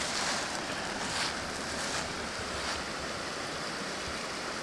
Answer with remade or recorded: recorded